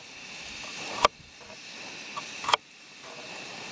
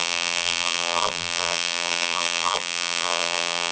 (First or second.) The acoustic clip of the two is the first